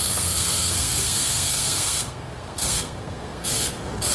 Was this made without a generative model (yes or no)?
no